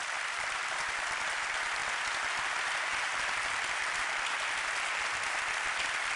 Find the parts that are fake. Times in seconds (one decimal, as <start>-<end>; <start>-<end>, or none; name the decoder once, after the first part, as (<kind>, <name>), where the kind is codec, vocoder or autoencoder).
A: none

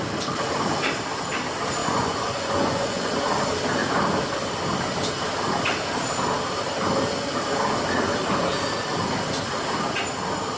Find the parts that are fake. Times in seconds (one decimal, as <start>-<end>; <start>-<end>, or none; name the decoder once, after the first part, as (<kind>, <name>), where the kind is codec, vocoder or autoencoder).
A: 1.8-3.1 (vocoder, Vocos)

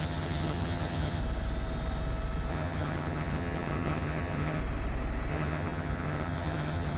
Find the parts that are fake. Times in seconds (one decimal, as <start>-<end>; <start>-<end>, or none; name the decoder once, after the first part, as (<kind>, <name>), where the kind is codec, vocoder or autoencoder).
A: 0.0-1.2 (vocoder, HiFi-GAN); 2.5-4.6; 5.3-7.0

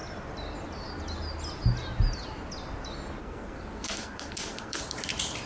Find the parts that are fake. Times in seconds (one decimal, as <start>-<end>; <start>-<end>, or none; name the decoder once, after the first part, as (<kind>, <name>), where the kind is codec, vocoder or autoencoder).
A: 3.2-4.8 (codec, SNAC)

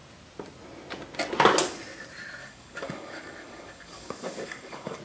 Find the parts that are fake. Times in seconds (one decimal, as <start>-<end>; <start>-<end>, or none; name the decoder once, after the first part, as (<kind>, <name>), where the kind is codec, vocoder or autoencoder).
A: 2.4-5.0 (codec, DAC)